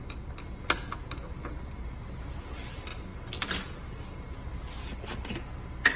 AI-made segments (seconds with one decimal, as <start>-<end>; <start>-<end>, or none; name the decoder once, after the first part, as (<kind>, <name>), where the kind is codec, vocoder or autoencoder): none